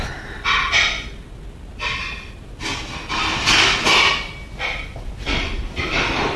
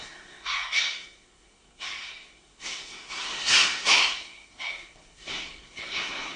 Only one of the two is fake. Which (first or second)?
second